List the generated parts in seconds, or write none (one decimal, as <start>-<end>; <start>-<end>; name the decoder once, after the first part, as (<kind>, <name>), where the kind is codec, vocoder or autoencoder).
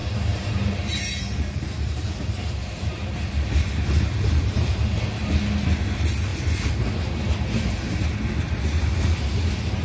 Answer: 0.0-5.0 (vocoder, BigVGAN v2); 6.3-7.1